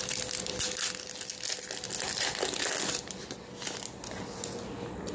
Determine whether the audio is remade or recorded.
recorded